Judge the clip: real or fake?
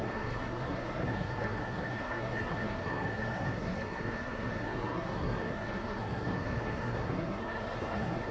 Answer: fake